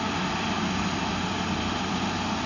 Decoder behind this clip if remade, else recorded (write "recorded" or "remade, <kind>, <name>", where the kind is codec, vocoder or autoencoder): recorded